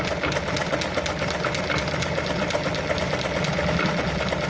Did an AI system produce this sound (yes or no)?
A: no